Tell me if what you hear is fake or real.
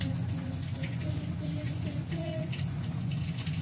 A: fake